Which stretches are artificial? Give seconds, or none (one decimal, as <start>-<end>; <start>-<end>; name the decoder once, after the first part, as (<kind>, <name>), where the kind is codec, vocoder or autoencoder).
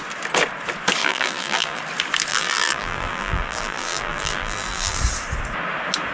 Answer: 1.0-1.8 (vocoder, BigVGAN v2); 2.3-5.0